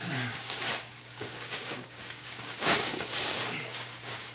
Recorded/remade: remade